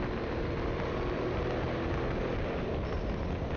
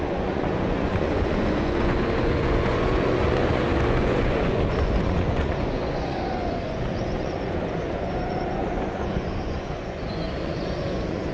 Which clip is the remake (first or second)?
second